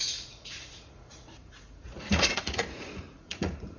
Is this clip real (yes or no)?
no